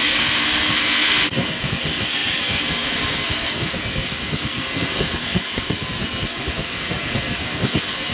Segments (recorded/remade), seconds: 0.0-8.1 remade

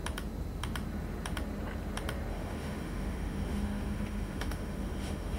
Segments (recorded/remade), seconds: 0.0-2.3 recorded; 2.3-5.4 remade

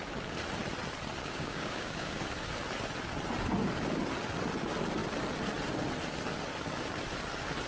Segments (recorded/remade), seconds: 0.0-1.2 recorded; 1.2-2.2 remade; 2.2-7.7 recorded

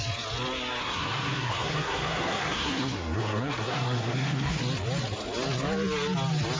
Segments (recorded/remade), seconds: 0.0-0.8 recorded; 0.8-4.6 remade; 4.6-6.6 recorded

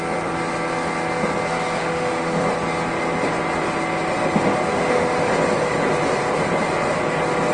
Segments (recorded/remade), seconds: 0.0-1.8 recorded; 1.8-2.4 remade; 2.4-4.7 recorded; 4.7-5.3 remade; 5.3-7.5 recorded

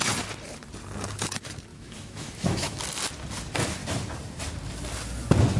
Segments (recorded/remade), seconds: 0.0-1.7 recorded; 1.7-2.8 remade; 2.8-5.6 recorded